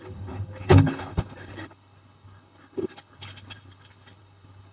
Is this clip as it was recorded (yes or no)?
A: no